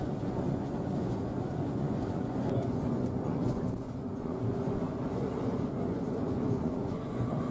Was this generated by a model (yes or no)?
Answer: yes